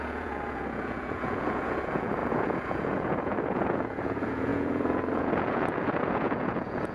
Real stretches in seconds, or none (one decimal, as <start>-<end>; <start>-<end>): none